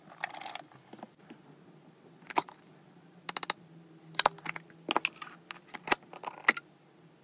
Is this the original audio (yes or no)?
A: yes